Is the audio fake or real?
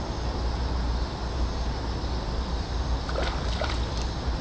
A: real